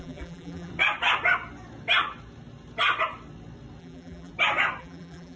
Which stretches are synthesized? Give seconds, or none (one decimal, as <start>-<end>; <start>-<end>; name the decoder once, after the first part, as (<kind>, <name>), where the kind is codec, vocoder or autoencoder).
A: 0.0-0.7 (vocoder, BigVGAN v2); 3.8-4.3; 4.8-5.4